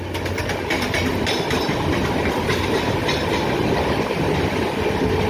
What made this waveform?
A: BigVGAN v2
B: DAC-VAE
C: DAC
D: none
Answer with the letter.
D